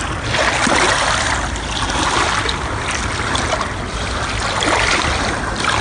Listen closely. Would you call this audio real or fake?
real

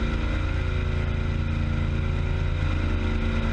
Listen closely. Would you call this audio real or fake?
real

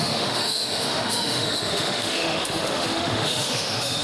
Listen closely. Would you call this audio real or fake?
fake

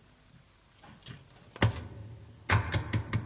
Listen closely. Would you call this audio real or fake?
real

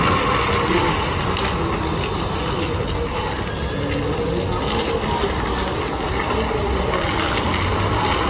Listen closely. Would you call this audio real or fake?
real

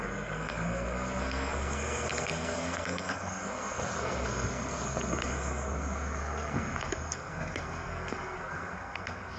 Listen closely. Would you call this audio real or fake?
fake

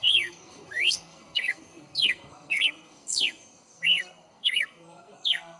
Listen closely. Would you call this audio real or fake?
fake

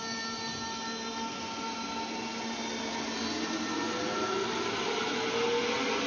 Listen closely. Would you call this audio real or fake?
real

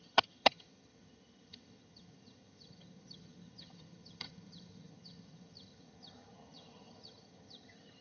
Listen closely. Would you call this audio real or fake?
fake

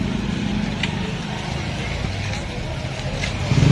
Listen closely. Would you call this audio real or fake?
real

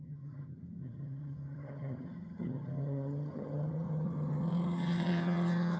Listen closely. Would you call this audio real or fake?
fake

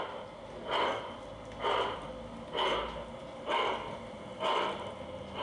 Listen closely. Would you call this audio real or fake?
real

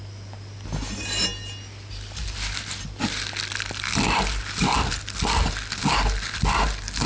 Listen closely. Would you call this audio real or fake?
real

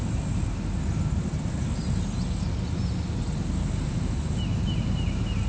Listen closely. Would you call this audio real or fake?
real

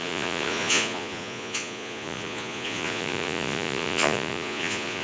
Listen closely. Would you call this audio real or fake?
fake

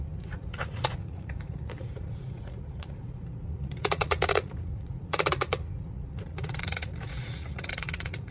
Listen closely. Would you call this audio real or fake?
fake